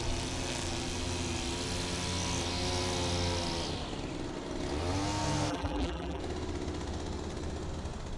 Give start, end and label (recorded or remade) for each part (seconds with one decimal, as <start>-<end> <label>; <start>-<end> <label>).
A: 0.0-5.5 recorded; 5.5-6.2 remade; 6.2-8.2 recorded